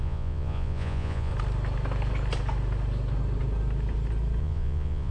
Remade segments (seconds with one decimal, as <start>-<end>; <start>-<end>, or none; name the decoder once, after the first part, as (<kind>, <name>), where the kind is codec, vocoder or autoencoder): 0.0-1.3 (vocoder, Vocos); 4.4-5.1

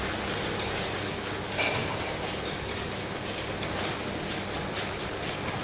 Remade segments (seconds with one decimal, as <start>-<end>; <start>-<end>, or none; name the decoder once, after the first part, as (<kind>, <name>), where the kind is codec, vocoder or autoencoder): none